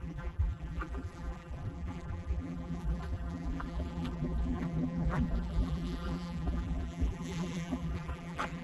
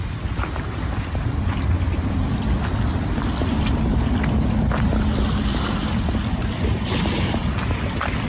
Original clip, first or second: second